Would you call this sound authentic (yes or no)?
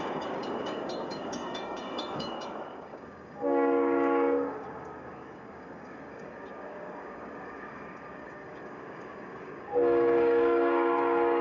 no